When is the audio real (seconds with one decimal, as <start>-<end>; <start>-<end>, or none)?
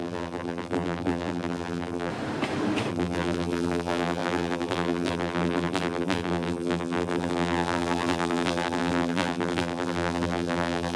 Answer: 2.1-2.9